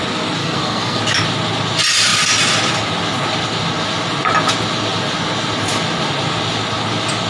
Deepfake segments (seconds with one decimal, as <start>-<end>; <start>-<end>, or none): 0.4-1.0